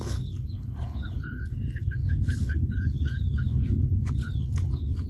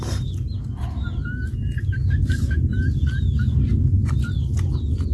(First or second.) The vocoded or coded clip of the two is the first